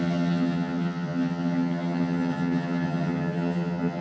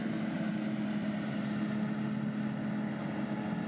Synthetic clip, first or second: first